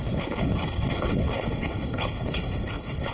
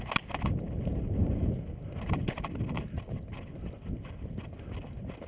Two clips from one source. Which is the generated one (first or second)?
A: first